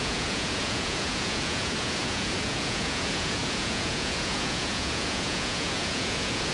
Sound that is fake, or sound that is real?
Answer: fake